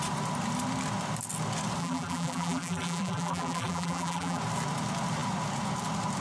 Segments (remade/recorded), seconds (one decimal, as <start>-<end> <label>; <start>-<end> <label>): 0.0-1.8 recorded; 1.8-4.4 remade; 4.4-6.2 recorded